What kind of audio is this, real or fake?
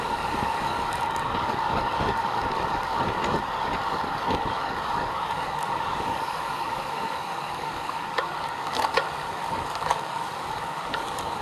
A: fake